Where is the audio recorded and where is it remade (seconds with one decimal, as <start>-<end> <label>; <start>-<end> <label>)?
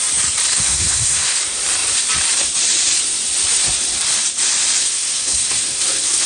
0.0-0.5 recorded; 0.5-1.4 remade; 1.4-4.8 recorded; 4.8-6.3 remade